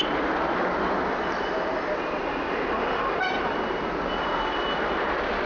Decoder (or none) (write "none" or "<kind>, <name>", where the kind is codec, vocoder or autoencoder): none